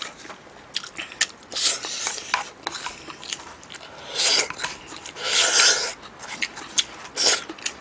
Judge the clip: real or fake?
real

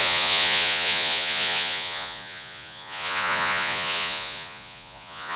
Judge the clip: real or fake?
fake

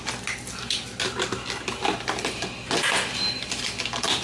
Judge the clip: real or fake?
real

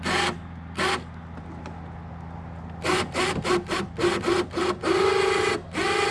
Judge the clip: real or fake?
real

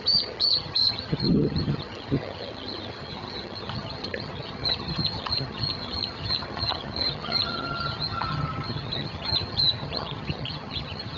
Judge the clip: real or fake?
fake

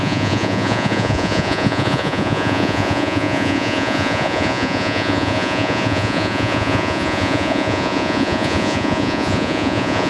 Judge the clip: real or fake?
fake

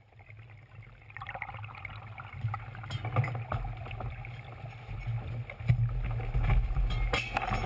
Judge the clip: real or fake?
real